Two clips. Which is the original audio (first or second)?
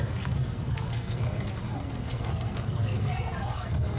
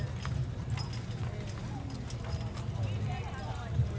second